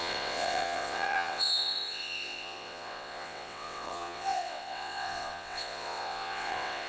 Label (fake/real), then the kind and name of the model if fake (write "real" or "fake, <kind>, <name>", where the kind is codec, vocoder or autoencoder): fake, vocoder, WaveNeXt